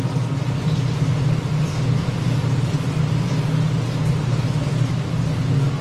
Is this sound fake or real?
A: real